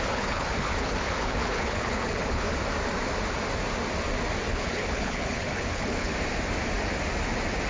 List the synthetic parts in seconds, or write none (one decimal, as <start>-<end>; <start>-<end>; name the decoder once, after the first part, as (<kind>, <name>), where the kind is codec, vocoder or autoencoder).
0.0-2.5 (codec, HILCodec); 4.5-6.1